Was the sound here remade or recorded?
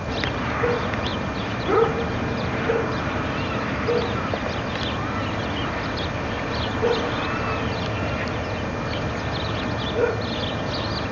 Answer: recorded